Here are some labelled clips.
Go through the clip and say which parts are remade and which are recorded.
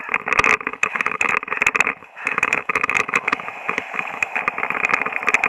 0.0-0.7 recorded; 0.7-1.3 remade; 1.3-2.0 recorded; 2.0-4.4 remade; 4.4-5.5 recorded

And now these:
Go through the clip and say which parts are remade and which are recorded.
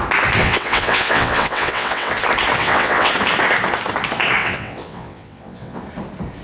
0.0-0.4 recorded; 0.4-2.1 remade; 2.1-2.6 recorded; 2.6-3.1 remade; 3.1-4.4 recorded; 4.4-5.8 remade; 5.8-6.4 recorded